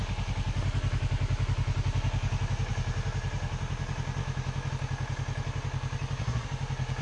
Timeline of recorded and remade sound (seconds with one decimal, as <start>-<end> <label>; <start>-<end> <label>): 0.0-4.2 recorded; 4.2-4.7 remade; 4.7-7.0 recorded